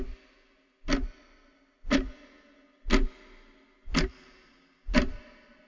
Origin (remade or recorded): recorded